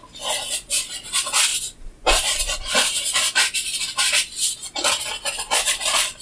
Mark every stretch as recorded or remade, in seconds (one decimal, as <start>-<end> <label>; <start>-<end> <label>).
0.0-1.5 recorded; 1.5-2.7 remade; 2.7-6.2 recorded